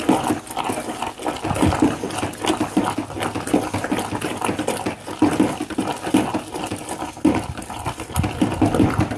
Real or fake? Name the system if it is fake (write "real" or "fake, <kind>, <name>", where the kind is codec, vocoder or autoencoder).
real